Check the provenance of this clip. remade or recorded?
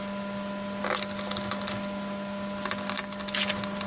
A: recorded